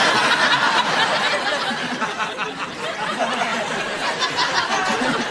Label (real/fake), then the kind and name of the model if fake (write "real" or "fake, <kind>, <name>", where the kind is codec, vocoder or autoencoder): real